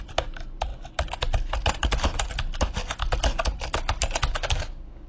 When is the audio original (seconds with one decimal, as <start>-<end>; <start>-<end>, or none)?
0.0-4.3